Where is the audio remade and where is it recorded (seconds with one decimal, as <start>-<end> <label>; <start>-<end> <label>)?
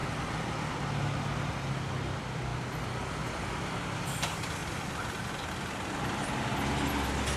0.0-7.4 recorded